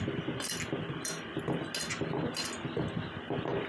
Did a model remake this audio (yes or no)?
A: no